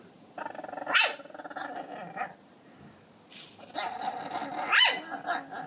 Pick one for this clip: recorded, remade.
recorded